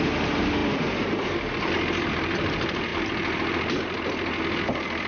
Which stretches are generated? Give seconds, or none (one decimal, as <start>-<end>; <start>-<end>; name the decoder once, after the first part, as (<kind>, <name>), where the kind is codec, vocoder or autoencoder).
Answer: none